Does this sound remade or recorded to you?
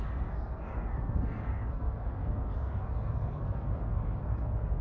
remade